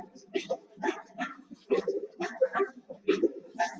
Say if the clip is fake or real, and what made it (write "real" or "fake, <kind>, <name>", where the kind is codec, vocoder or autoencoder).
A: fake, autoencoder, DAC-VAE